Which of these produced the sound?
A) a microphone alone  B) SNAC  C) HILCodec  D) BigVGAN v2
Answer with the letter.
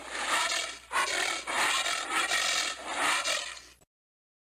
A